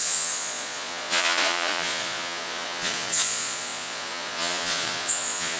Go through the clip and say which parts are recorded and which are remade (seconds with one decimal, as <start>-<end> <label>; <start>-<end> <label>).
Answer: 0.0-5.6 remade